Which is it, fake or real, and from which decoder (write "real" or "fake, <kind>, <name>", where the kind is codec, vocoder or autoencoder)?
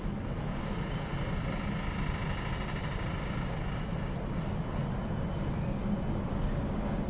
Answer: real